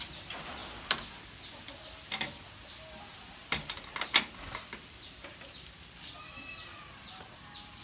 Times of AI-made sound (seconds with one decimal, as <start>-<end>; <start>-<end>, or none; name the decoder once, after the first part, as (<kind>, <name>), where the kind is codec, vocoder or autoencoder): none